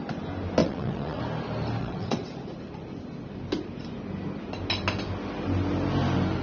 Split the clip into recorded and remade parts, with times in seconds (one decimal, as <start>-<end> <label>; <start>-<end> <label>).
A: 0.0-0.6 recorded; 0.6-1.2 remade; 1.2-1.8 recorded; 1.8-2.3 remade; 2.3-6.4 recorded